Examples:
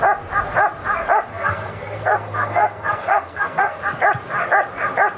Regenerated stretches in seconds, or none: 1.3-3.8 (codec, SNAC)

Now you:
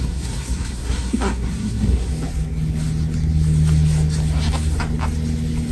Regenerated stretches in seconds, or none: 0.0-2.1 (codec, SNAC)

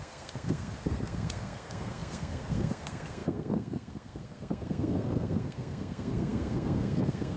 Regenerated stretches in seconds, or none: 0.0-7.4 (codec, SNAC)

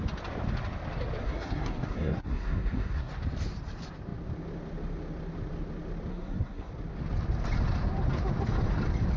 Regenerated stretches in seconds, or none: 1.2-3.1 (codec, SNAC); 6.1-6.7

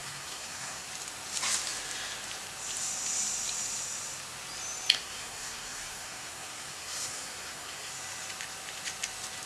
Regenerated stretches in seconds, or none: 0.0-0.9 (codec, SNAC); 5.0-7.9

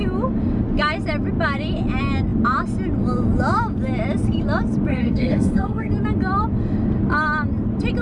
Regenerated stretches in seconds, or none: 4.9-5.9 (codec, SNAC)

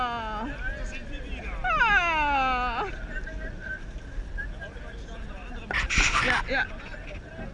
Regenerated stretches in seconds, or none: none

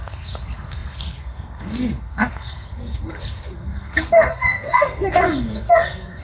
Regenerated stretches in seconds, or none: 0.0-6.2 (codec, SNAC)